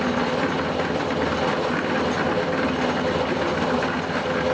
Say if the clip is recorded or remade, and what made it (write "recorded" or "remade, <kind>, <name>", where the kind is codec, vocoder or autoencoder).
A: recorded